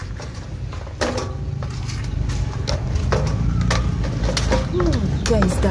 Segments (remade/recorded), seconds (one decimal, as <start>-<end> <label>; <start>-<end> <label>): 0.0-0.5 remade; 0.5-5.7 recorded